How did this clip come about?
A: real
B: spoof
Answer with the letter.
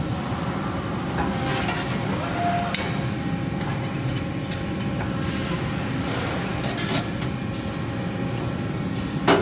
A